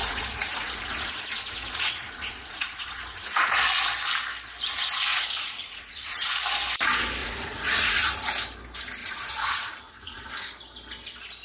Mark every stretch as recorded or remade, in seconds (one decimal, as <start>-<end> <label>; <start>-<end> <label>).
0.0-3.6 remade; 3.6-5.1 recorded; 5.1-6.3 remade; 6.3-7.2 recorded; 7.2-8.3 remade; 8.3-9.0 recorded; 9.0-10.3 remade; 10.3-11.4 recorded